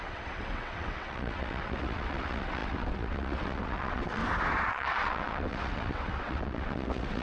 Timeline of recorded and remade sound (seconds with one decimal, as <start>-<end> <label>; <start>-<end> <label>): 0.0-4.2 remade; 4.2-4.7 recorded; 4.7-7.2 remade